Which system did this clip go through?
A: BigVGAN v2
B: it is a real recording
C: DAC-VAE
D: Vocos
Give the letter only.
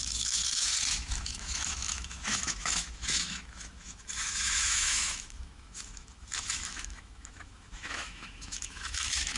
C